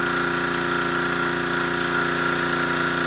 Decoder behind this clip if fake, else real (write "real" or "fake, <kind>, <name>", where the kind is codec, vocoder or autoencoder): real